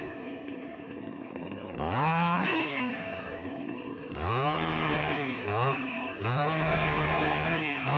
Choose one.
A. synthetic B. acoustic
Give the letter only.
A